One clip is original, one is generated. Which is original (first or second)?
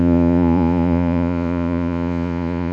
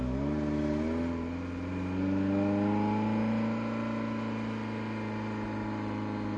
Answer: second